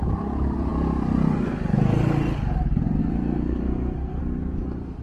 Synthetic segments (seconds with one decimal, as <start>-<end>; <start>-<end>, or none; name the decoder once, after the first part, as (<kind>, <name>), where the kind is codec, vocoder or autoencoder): 3.0-4.2 (codec, SNAC)